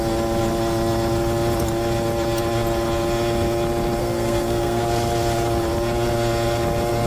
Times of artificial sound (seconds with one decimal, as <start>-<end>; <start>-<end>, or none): 4.0-4.8